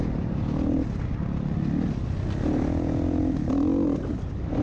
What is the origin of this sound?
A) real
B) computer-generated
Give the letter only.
A